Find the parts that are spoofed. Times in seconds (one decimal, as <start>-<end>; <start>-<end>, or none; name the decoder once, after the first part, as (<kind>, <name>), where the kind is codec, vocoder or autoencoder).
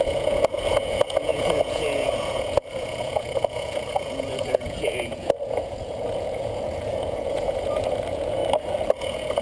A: 0.0-8.4 (vocoder, Vocos); 9.0-9.4